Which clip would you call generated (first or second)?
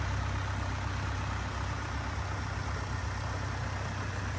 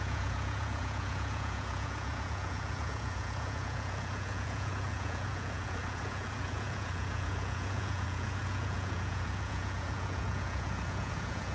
second